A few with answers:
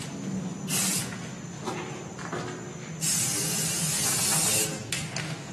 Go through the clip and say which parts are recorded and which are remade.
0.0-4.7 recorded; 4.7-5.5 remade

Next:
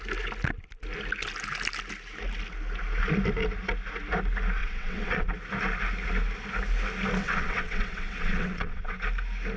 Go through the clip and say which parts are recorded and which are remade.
0.0-4.6 recorded; 4.6-5.3 remade; 5.3-7.2 recorded; 7.2-9.0 remade; 9.0-9.6 recorded

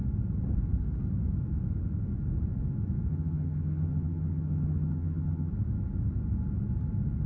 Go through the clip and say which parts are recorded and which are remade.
0.0-3.1 recorded; 3.1-5.5 remade; 5.5-7.3 recorded

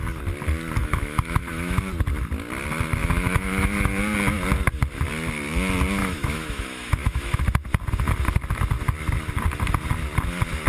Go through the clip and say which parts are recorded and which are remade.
0.0-0.8 recorded; 0.8-1.8 remade; 1.8-3.0 recorded; 3.0-4.0 remade; 4.0-6.0 recorded; 6.0-7.4 remade; 7.4-10.7 recorded

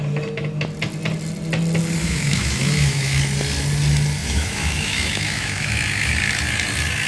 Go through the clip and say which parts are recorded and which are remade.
0.0-2.0 recorded; 2.0-3.2 remade; 3.2-4.2 recorded; 4.2-6.1 remade; 6.1-7.1 recorded

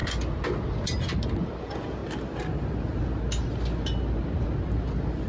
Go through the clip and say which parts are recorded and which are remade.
0.0-1.6 recorded; 1.6-2.0 remade; 2.0-5.3 recorded